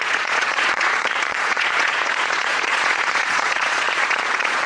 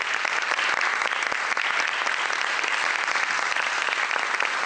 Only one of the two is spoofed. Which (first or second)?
first